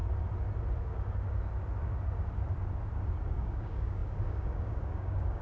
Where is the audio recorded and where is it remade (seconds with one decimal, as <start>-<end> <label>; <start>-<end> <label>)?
0.0-3.2 recorded; 3.2-5.4 remade